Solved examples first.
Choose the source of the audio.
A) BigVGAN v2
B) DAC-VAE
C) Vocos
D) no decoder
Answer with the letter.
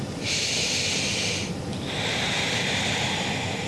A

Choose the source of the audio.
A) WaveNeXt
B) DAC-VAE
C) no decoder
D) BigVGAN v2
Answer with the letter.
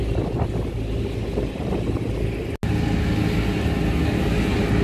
C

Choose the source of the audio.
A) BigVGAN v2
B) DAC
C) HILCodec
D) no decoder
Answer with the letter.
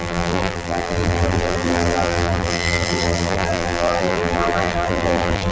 A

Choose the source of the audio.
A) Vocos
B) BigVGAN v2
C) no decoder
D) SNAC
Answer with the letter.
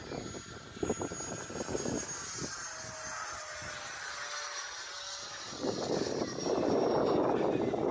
C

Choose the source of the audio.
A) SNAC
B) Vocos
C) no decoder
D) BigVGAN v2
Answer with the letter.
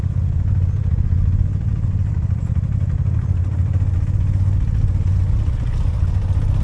C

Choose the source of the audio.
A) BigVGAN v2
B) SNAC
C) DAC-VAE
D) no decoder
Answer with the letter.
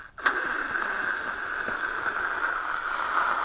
D